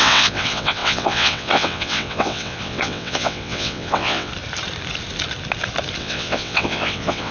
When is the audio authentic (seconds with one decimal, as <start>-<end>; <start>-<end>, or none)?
4.3-6.0